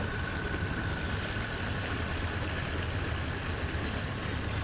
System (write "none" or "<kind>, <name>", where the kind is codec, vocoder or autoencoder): none